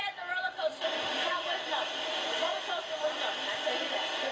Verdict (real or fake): real